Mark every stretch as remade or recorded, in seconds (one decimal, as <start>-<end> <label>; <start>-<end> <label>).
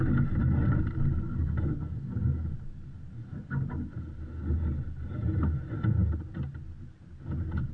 0.0-7.7 recorded